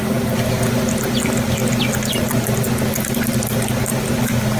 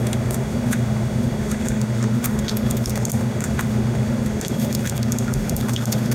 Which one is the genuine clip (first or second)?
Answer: first